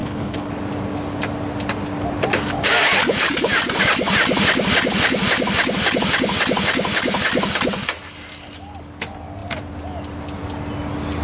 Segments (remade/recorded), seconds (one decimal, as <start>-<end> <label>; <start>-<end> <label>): 0.0-0.5 remade; 0.5-11.2 recorded